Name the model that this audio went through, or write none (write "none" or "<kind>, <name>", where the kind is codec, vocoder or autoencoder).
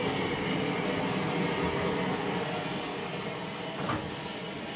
none